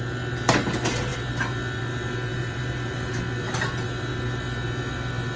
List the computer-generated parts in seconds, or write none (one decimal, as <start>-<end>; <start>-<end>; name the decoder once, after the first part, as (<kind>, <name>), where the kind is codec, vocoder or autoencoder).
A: 2.3-3.2 (vocoder, BigVGAN v2)

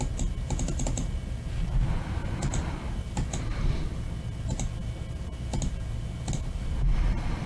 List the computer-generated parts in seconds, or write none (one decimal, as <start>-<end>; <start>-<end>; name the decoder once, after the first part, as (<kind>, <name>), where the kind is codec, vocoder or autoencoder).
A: none

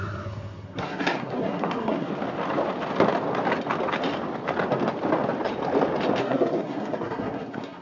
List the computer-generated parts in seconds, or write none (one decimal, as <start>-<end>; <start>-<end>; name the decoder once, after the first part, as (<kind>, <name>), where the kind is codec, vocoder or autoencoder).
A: 0.0-2.1 (codec, SNAC); 6.2-7.8

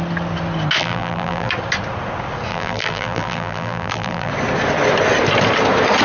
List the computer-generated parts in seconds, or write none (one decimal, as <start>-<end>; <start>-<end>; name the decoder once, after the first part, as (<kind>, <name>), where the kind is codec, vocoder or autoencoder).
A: 0.8-1.5 (vocoder, BigVGAN v2); 2.5-4.3

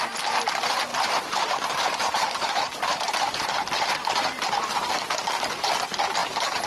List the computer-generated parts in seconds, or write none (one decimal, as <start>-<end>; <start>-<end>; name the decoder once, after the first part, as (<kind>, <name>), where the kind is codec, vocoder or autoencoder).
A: 0.9-4.9 (vocoder, BigVGAN v2); 6.2-6.7

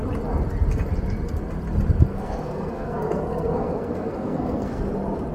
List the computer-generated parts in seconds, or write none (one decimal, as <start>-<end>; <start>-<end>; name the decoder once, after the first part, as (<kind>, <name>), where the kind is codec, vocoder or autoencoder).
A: 2.1-4.8 (codec, SNAC)

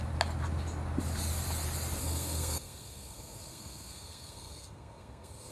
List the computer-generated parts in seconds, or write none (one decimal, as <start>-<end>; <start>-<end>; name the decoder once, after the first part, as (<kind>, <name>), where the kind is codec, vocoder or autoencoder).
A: 2.0-5.5 (codec, SNAC)